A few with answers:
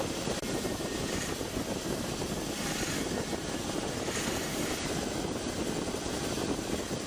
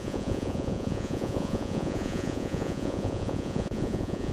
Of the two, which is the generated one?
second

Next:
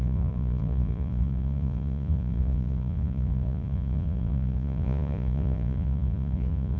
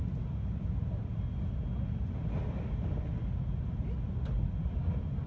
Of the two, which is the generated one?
first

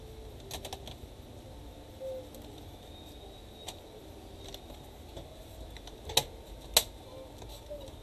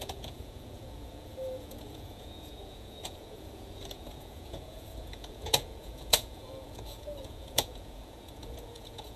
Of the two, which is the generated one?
second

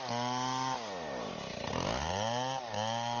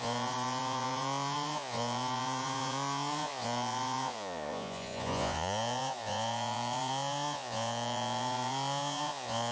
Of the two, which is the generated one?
second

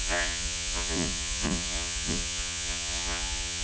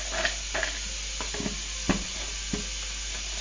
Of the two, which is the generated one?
first